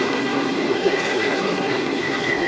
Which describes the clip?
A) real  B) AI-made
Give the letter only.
B